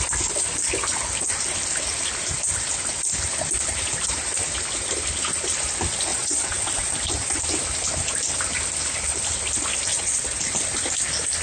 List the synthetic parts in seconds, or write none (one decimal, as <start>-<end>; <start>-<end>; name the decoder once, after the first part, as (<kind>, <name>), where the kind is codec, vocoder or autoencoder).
6.1-6.9 (vocoder, WaveNeXt); 9.9-10.4